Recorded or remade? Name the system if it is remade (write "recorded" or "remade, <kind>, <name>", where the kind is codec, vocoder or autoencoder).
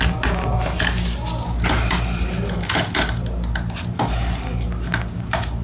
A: recorded